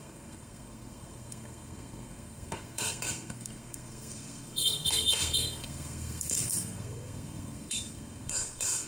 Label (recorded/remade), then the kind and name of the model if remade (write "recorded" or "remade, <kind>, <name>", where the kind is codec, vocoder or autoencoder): remade, codec, SNAC